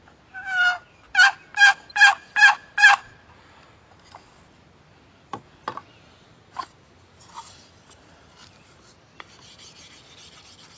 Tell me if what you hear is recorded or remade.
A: recorded